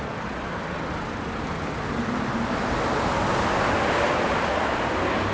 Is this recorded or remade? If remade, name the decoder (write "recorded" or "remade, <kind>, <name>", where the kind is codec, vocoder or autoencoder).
recorded